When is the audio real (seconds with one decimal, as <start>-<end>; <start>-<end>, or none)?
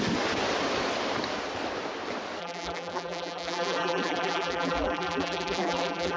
0.0-2.4